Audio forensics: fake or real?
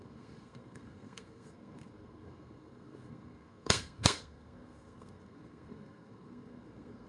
fake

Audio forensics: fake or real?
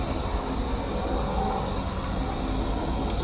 real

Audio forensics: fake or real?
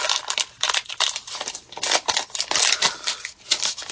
real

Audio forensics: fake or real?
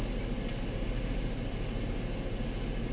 real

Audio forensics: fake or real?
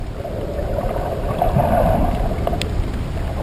real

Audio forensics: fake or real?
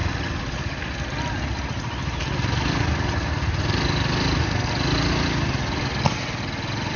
real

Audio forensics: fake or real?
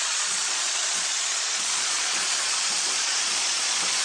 fake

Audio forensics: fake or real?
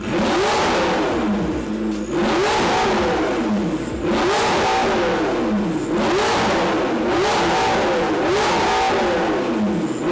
real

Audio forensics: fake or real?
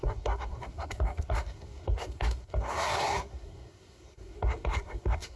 fake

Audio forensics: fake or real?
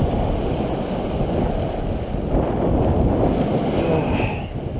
real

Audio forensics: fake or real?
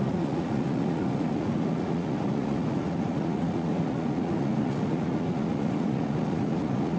fake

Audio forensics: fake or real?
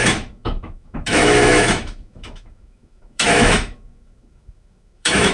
fake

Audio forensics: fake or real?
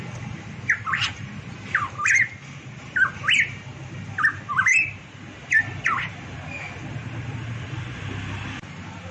real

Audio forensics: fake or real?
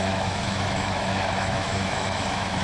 fake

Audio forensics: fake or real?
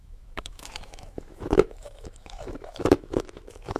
fake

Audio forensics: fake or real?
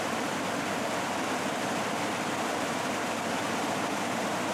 fake